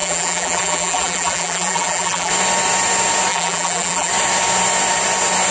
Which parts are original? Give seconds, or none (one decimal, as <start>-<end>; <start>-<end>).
2.3-3.3; 4.1-5.5